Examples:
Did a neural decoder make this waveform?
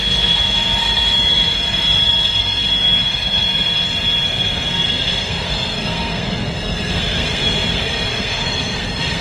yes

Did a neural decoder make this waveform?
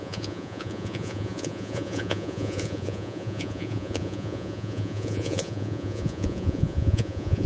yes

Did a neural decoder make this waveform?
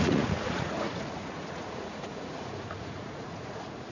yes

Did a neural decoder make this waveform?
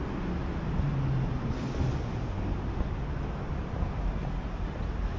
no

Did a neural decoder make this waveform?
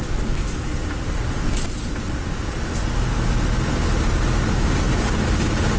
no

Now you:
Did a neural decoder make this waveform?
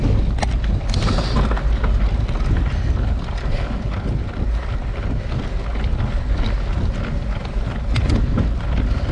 no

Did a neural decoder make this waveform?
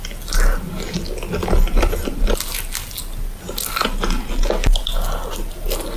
no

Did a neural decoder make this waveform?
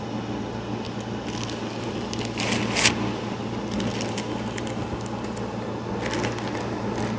no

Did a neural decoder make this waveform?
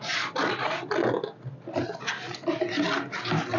no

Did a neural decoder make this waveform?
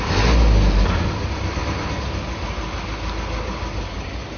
no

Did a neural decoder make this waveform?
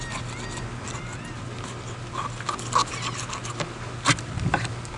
no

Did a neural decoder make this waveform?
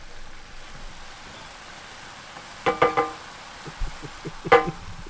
no